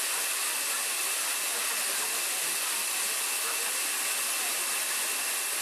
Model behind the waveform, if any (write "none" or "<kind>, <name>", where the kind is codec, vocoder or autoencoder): none